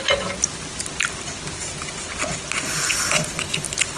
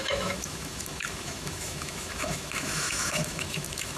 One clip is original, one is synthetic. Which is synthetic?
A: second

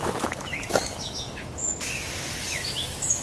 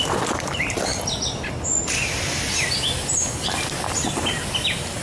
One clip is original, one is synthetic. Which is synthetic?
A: first